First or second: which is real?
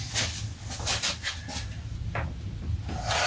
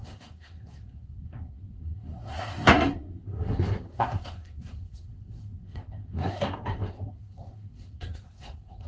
first